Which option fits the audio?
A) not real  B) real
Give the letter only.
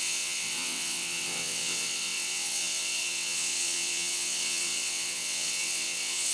A